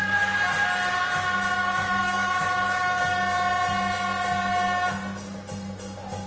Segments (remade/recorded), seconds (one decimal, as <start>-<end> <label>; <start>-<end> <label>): 0.0-1.6 recorded; 1.6-3.0 remade; 3.0-6.3 recorded